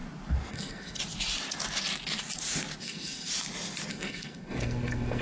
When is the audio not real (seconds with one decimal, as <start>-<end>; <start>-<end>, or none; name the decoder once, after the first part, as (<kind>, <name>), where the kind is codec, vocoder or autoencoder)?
0.5-1.0 (codec, SNAC); 2.8-3.3; 3.9-5.2